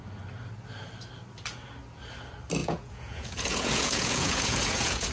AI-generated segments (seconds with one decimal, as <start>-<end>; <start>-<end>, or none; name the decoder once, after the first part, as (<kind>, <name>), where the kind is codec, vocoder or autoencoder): 2.6-5.1 (vocoder, Vocos)